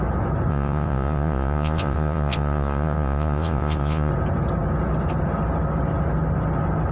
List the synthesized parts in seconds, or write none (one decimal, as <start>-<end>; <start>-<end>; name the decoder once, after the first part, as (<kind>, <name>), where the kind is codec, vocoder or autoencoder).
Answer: 0.5-4.1 (vocoder, Vocos)